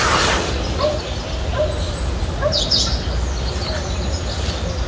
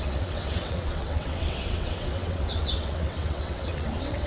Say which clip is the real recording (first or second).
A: first